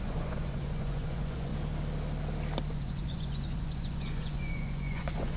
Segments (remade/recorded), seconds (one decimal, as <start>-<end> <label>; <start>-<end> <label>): 0.0-1.5 remade; 1.5-2.7 recorded; 2.7-5.4 remade